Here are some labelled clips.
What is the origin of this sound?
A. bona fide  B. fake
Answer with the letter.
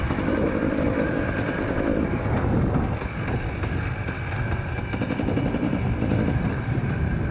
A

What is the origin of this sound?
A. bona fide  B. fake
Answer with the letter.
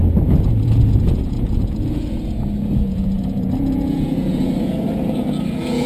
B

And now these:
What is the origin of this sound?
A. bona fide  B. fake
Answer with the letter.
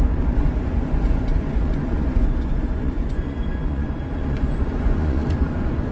B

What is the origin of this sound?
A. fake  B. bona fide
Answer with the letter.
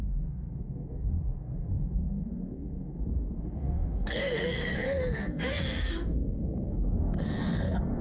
A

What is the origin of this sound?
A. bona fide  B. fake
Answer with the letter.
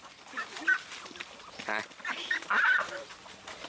A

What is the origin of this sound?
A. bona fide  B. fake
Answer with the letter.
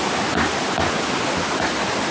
A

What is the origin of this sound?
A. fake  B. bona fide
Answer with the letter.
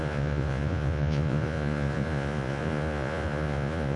A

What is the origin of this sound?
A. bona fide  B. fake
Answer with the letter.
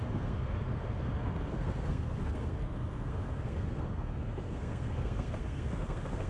B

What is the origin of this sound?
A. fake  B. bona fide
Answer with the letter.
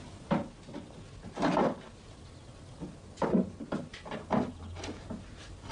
B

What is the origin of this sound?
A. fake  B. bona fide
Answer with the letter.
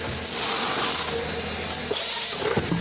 B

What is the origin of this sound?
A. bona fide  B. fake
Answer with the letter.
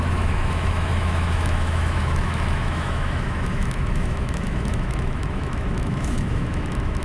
B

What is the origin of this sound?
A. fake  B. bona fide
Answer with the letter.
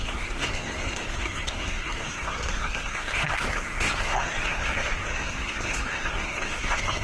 A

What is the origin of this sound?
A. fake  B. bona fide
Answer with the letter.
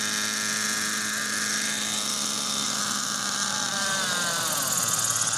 B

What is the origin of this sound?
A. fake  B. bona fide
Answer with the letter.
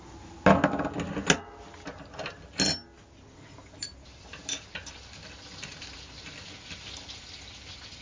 B